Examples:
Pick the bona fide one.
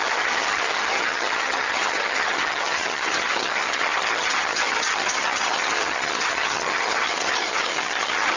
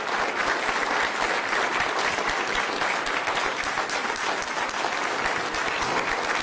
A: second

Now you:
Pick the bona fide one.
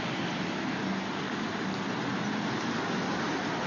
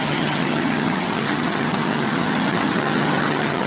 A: first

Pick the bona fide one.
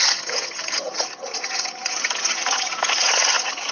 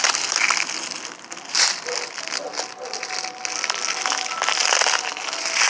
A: second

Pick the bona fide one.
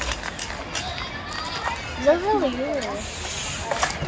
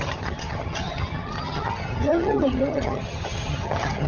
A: first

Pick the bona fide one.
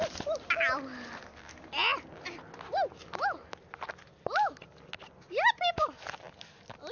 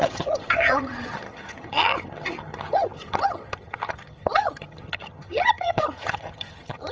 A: first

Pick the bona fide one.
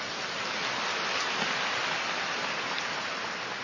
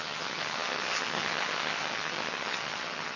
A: first